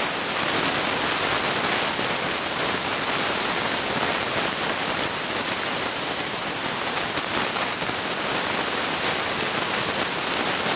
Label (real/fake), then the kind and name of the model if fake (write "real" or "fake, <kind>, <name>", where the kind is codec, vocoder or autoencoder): real